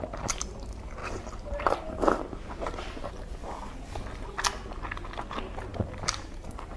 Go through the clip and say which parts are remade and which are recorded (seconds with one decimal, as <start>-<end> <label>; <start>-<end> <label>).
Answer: 0.0-1.0 recorded; 1.0-3.1 remade; 3.1-5.7 recorded; 5.7-6.8 remade